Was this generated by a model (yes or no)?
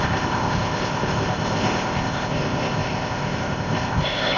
yes